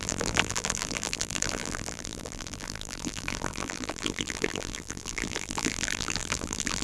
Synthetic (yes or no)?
yes